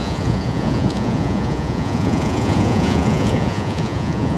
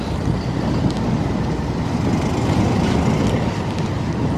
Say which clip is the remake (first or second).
first